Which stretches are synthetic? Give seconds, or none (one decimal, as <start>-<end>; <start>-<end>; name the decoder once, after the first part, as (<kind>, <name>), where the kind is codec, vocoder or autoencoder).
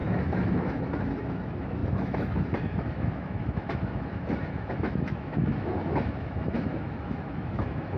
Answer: 0.0-8.0 (autoencoder, DAC-VAE)